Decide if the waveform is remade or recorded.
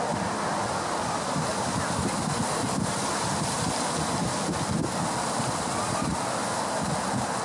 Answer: recorded